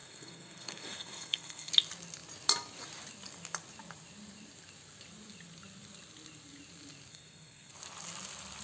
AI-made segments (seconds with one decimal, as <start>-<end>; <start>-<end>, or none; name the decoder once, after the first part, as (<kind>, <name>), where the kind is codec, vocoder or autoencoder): 0.0-1.7 (codec, SNAC); 7.1-7.7

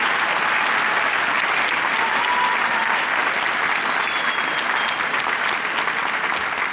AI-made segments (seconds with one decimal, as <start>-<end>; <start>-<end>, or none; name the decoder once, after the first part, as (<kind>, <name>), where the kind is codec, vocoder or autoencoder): none

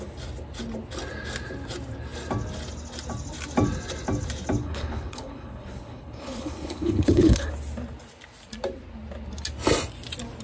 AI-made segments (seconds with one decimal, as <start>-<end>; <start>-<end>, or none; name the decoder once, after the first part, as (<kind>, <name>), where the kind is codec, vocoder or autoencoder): 4.6-7.5 (codec, HILCodec)

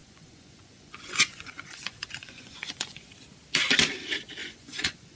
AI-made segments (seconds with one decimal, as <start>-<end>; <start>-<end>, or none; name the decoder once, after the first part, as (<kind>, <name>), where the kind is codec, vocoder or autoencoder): 0.0-3.1 (vocoder, Vocos); 4.4-5.2

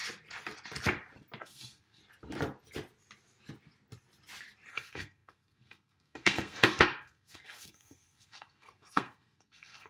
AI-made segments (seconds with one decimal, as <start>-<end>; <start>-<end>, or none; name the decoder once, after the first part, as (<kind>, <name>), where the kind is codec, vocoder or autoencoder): 1.4-2.0 (codec, SNAC); 4.7-9.9

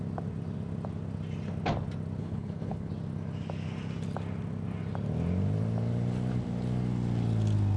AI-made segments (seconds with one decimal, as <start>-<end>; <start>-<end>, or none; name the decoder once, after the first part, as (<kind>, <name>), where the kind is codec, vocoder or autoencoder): 2.2-2.9 (codec, HILCodec)

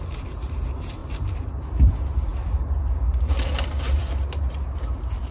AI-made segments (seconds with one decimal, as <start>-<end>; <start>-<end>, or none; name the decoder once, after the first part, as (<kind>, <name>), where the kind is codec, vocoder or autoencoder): 0.0-5.3 (vocoder, BigVGAN v2)